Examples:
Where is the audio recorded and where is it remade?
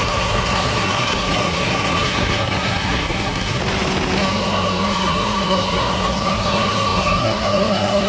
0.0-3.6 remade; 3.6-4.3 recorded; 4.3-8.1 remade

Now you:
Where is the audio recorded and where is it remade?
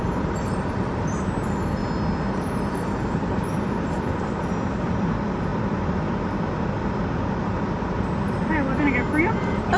0.0-1.8 remade; 1.8-2.3 recorded; 2.3-5.5 remade; 5.5-9.4 recorded; 9.4-9.8 remade